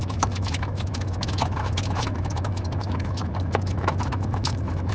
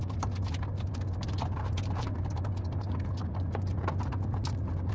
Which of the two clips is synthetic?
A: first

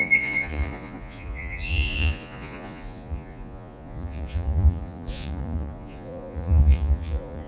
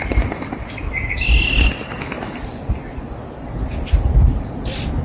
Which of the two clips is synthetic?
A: first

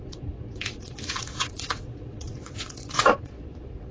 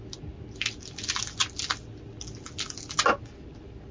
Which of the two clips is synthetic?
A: first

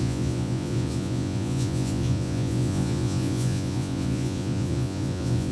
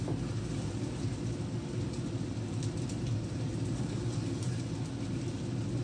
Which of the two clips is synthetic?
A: first